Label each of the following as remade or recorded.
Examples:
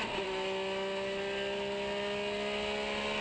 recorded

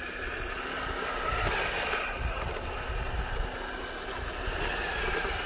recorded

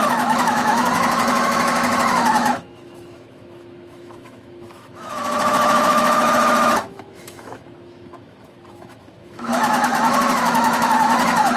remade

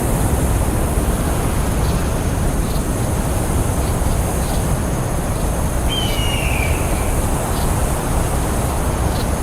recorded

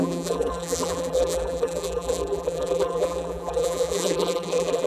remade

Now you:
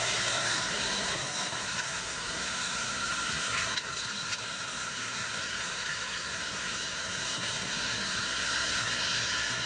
remade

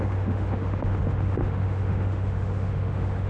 remade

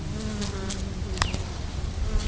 recorded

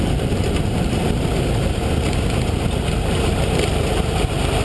recorded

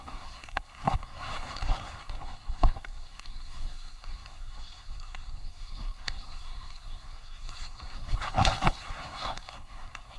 remade